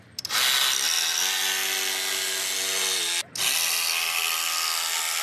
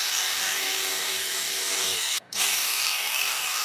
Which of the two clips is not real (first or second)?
second